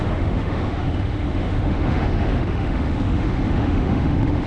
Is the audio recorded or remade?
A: remade